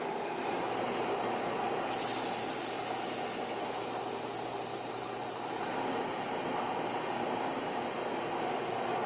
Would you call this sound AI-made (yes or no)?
no